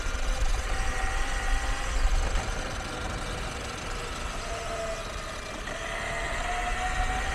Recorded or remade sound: recorded